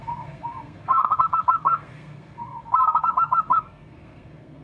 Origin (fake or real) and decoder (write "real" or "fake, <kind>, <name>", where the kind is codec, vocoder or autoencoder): fake, codec, SNAC